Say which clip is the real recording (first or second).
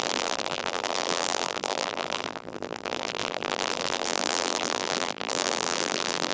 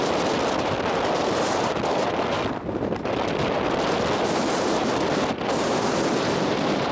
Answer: second